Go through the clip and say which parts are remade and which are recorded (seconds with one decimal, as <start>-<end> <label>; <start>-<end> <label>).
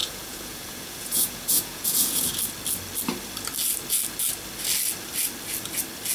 0.0-2.3 remade; 2.3-6.1 recorded